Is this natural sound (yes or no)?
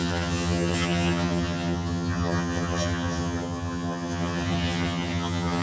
no